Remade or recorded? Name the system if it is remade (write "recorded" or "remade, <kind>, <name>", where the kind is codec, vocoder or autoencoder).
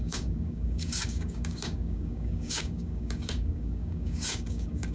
remade, codec, DAC